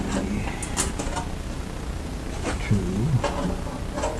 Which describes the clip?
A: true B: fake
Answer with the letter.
A